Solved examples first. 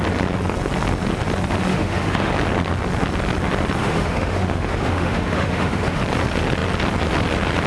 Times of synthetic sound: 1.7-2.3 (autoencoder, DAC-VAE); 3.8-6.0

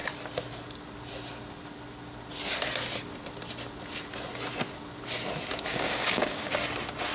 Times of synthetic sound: 5.7-6.5 (codec, DAC)

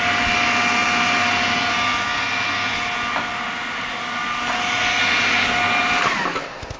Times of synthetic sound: none